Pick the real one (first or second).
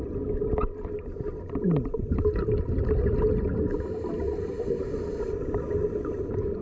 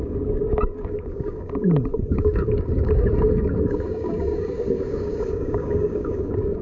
first